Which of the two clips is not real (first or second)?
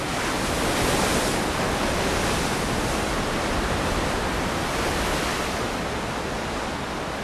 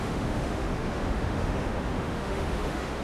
second